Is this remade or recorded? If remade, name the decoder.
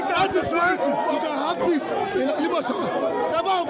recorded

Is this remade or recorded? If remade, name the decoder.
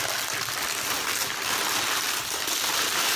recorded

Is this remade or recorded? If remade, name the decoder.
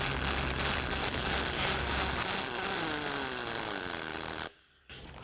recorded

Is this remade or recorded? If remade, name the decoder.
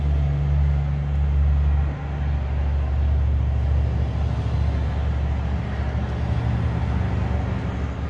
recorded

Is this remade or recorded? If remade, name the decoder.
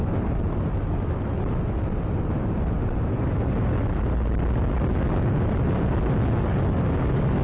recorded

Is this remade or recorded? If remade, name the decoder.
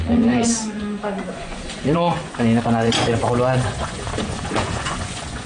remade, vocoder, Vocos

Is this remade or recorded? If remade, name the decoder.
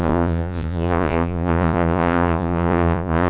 remade, vocoder, Vocos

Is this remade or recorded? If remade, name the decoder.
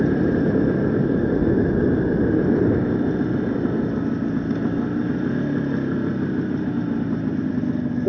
recorded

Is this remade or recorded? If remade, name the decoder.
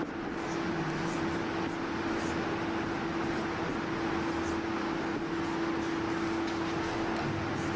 recorded